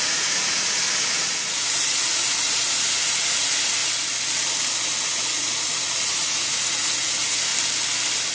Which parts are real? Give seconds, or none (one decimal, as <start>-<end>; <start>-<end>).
3.8-5.0; 7.5-8.3